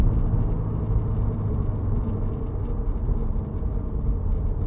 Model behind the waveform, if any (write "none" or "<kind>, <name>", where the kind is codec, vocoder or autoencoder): none